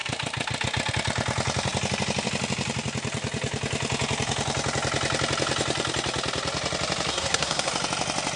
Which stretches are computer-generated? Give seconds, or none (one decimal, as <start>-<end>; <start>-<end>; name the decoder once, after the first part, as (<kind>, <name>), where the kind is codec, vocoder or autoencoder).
7.1-7.7 (codec, SNAC)